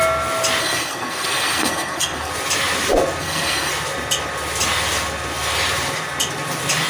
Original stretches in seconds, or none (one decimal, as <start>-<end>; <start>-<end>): 0.0-0.6; 2.3-3.2; 3.7-6.9